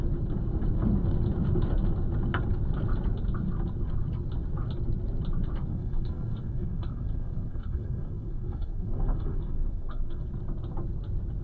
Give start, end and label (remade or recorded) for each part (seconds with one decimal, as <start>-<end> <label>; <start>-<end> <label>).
0.0-5.7 recorded; 5.7-10.3 remade; 10.3-11.4 recorded